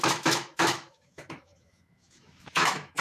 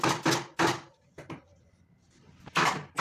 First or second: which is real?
second